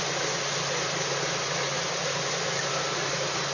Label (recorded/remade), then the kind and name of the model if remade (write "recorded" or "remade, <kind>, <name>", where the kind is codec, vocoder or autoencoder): recorded